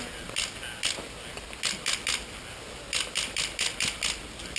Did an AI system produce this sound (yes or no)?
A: no